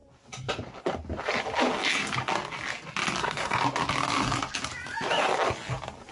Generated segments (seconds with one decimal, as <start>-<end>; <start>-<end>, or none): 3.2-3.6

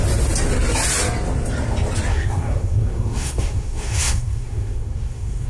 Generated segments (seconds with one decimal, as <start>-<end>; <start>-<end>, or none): 2.1-5.5

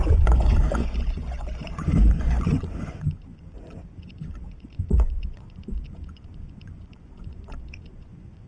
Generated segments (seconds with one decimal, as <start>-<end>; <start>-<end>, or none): 0.0-8.5

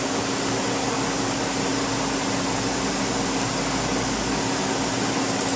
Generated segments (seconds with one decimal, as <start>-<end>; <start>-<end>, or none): none